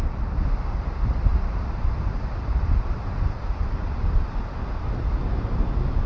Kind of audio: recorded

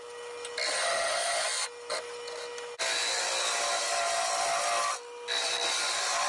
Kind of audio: recorded